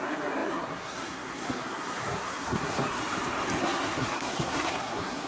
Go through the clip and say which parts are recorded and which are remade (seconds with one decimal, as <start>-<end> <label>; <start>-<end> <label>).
0.0-3.0 remade; 3.0-3.6 recorded; 3.6-5.3 remade